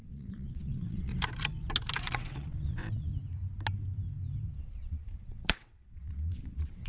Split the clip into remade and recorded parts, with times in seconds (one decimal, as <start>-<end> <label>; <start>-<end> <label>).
0.0-1.1 remade; 1.1-2.0 recorded; 2.0-3.1 remade; 3.1-4.6 recorded; 4.6-6.9 remade